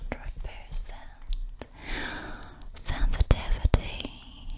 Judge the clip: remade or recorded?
recorded